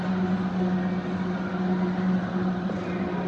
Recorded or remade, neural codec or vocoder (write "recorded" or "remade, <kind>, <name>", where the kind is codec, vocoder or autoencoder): recorded